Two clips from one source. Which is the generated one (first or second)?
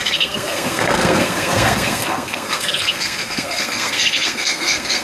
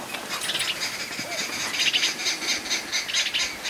first